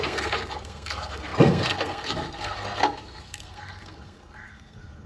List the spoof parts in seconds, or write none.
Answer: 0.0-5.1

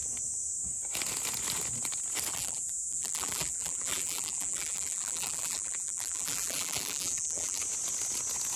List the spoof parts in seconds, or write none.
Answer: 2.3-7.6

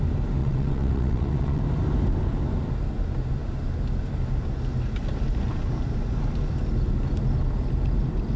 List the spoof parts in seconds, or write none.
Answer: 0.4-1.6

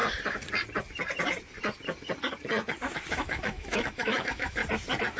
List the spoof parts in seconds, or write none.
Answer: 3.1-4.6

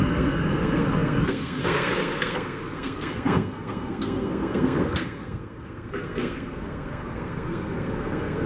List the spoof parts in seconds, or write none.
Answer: 0.0-8.5

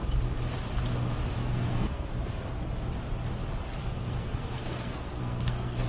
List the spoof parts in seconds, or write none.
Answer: 1.4-2.1; 3.8-5.9

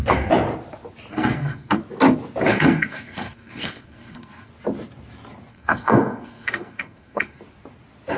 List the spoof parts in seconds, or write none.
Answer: 1.1-1.8; 2.5-4.5; 5.5-7.4

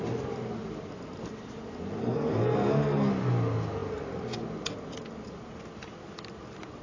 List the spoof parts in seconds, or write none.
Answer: 2.0-3.1